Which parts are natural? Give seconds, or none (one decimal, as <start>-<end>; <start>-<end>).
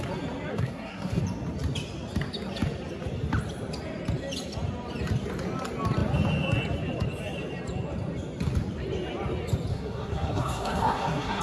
0.0-0.5; 1.2-9.7